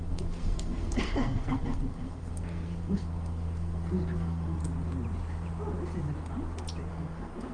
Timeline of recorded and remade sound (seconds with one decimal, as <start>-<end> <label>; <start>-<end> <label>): 0.0-4.6 remade; 4.6-6.9 recorded; 6.9-7.5 remade